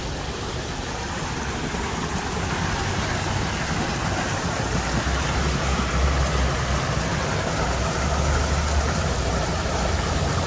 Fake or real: real